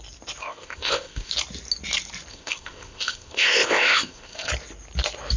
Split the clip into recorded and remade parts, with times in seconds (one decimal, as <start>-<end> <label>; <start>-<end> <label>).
0.0-0.4 recorded; 0.4-1.3 remade; 1.3-2.3 recorded; 2.3-4.5 remade; 4.5-5.4 recorded